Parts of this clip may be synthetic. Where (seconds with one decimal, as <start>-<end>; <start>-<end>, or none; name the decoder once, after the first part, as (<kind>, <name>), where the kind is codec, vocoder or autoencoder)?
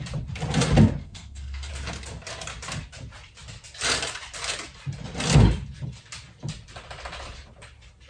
1.0-1.7 (codec, SNAC)